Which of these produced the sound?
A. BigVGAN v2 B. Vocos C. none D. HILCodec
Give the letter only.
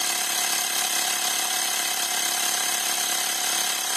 C